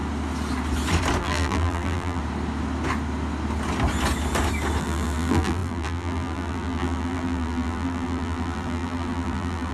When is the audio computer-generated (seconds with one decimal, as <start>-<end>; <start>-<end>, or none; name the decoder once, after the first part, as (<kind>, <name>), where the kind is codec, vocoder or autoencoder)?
1.2-2.2 (vocoder, BigVGAN v2); 4.8-9.7